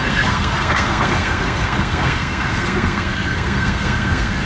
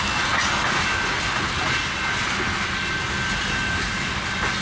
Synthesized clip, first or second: first